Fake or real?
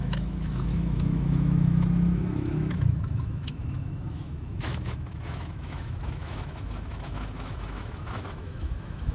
fake